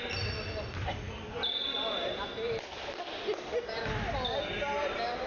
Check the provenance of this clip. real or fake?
real